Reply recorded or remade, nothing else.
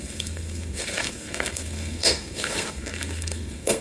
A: remade